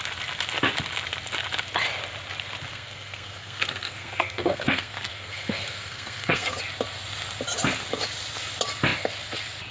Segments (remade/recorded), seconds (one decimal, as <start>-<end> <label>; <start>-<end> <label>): 0.0-2.7 recorded; 2.7-6.6 remade; 6.6-9.7 recorded